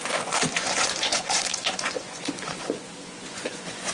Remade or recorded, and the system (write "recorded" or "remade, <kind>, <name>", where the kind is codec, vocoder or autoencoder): remade, vocoder, Vocos